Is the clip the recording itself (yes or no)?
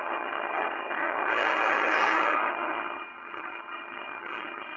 no